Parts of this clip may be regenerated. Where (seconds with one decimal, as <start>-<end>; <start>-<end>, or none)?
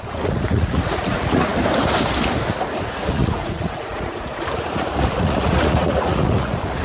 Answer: 0.0-1.5; 2.5-6.8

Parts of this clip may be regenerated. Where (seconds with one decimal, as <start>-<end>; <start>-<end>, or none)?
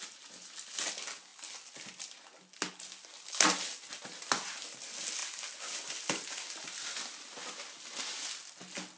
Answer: none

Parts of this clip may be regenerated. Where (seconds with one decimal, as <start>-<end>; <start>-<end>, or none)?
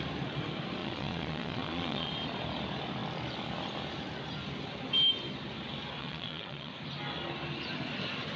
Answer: 0.8-2.1; 6.0-6.7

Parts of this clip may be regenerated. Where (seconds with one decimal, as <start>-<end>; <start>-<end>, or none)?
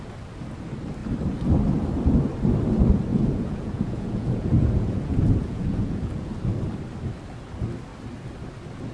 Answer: 3.1-6.3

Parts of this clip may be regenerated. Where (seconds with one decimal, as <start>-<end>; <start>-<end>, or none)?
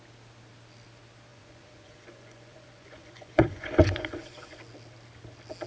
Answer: 1.3-4.6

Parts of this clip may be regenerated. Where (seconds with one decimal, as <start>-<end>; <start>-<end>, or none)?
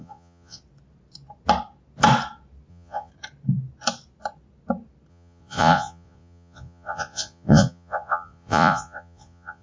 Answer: 0.0-0.6; 2.7-3.1; 5.1-9.6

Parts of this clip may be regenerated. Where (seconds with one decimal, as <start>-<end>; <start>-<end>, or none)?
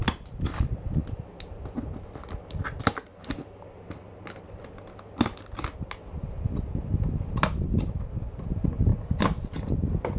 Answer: none